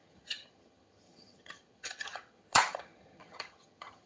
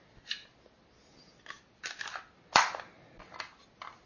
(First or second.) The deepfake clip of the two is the first